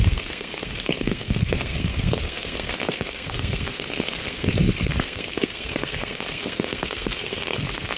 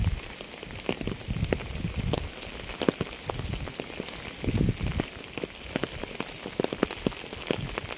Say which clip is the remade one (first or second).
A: first